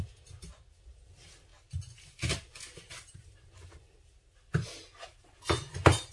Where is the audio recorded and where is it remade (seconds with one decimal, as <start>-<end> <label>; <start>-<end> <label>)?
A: 0.0-6.1 recorded